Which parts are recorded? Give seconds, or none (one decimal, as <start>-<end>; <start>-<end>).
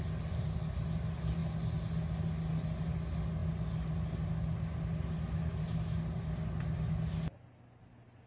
0.0-8.3